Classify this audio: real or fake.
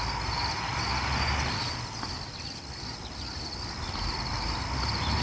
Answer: real